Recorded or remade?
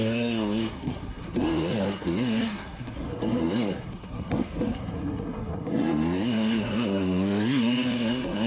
remade